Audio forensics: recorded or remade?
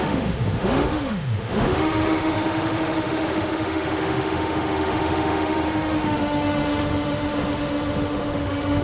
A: remade